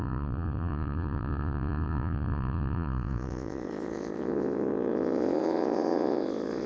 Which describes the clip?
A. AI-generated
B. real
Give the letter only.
A